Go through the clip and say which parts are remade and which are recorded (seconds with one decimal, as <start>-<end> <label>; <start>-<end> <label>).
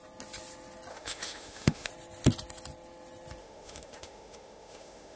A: 0.0-0.9 recorded; 0.9-1.9 remade; 1.9-3.4 recorded; 3.4-5.2 remade